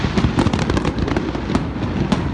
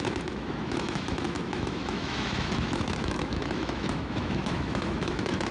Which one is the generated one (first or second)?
second